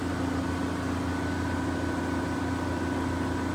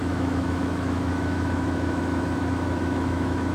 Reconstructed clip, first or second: second